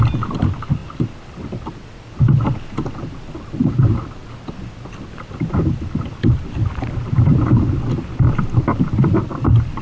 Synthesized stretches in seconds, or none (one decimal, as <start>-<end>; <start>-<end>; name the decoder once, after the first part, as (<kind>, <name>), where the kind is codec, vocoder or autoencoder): none

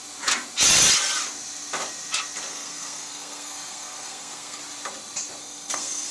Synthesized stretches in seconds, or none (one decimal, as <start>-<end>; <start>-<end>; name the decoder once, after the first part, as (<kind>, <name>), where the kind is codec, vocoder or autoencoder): 2.5-4.6 (codec, SNAC); 5.4-6.1

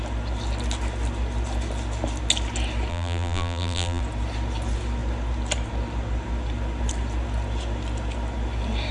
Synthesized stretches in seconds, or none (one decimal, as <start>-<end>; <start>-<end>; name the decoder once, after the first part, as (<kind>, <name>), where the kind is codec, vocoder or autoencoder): 2.9-4.0 (vocoder, BigVGAN v2)